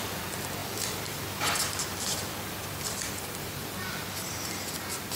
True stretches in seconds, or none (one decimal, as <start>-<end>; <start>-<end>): 0.0-0.6; 3.1-5.2